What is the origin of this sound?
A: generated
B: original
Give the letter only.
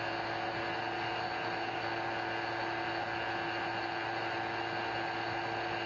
B